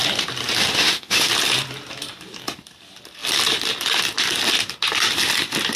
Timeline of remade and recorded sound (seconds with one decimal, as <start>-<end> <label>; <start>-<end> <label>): 0.0-0.6 recorded; 0.6-1.3 remade; 1.3-5.8 recorded